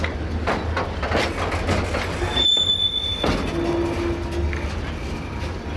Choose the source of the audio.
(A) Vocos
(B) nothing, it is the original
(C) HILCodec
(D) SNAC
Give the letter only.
B